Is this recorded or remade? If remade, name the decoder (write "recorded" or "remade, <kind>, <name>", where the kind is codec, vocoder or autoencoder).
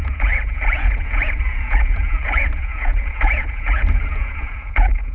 remade, vocoder, Vocos